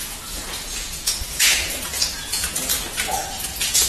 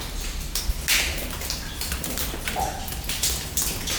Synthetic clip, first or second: first